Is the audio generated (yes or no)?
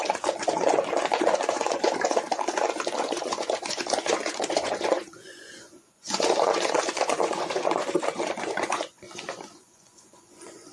yes